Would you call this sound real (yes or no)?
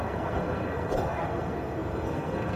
no